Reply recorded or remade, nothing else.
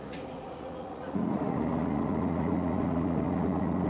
remade